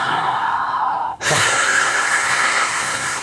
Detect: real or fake fake